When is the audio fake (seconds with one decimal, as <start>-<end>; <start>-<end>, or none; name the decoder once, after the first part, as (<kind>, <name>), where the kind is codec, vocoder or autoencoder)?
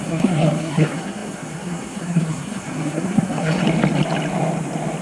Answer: 0.0-3.6 (codec, SNAC)